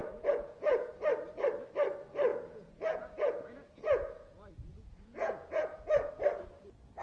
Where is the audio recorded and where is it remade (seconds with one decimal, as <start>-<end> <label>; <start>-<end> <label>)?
0.0-0.9 remade; 0.9-2.3 recorded; 2.3-6.1 remade; 6.1-7.0 recorded